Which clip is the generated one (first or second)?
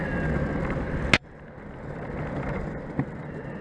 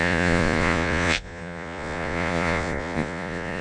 second